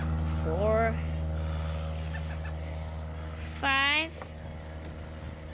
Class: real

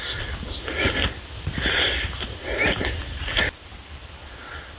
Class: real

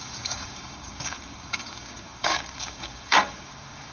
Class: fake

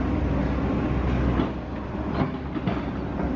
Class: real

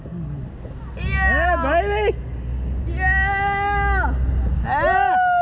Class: real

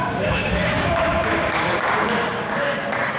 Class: fake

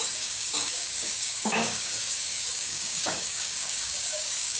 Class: fake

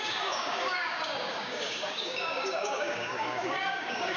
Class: fake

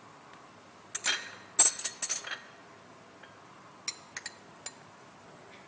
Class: real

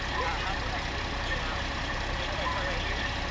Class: real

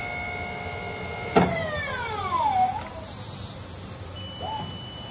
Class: real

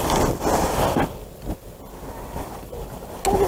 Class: real